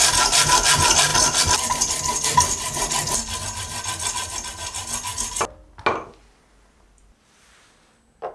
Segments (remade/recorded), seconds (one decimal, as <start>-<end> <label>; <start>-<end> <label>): 0.0-8.3 recorded